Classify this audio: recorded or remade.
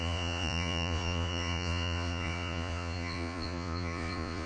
remade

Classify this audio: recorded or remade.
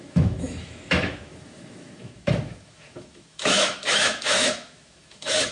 remade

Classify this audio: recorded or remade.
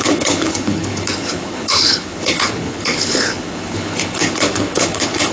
remade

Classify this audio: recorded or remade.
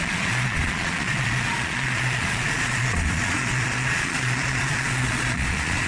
remade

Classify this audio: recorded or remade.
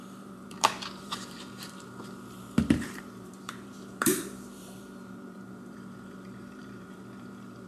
remade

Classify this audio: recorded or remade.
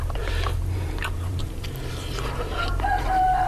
remade